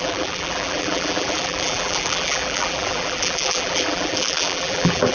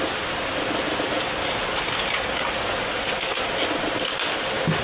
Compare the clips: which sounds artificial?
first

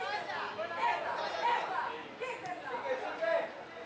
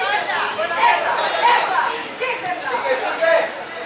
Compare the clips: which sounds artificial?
second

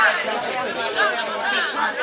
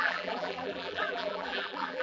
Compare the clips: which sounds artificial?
second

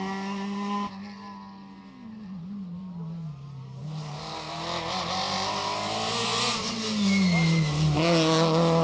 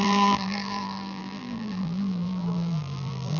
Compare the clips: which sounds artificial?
second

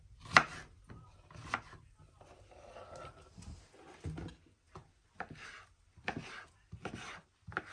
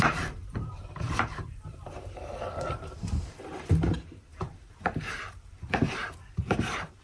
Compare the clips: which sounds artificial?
second